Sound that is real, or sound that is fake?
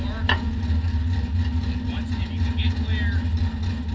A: real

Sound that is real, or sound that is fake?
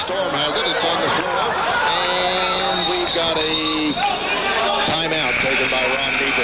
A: real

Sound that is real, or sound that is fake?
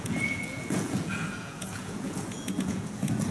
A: fake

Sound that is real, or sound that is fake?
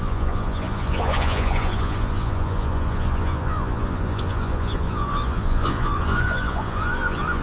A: fake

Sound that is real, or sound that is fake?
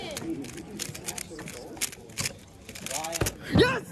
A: real